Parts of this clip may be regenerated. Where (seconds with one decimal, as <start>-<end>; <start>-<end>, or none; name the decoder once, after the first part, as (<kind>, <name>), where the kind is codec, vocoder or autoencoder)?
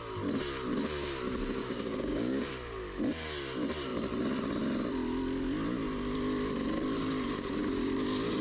1.6-2.5 (codec, DAC)